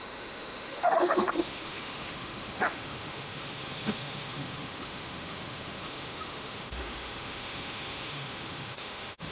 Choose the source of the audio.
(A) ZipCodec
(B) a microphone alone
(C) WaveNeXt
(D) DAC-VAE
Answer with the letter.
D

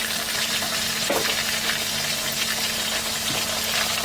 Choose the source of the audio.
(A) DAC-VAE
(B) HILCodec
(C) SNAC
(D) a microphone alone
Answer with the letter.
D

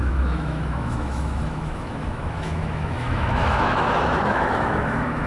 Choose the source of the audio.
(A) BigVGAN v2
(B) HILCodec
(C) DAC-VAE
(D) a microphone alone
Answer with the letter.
C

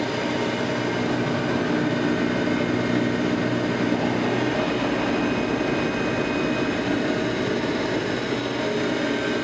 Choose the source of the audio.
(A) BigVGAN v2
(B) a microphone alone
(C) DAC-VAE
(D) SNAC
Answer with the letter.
B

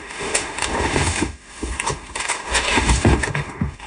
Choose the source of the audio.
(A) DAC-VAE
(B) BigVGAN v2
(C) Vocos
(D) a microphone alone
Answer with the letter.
A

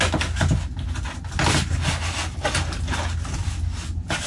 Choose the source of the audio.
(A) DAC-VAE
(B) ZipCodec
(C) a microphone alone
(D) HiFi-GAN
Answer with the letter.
C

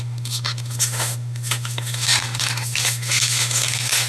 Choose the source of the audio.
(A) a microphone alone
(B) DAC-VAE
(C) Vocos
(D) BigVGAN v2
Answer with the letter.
B